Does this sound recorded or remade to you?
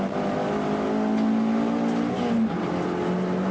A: recorded